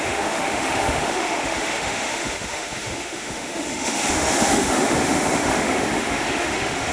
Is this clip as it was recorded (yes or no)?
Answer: no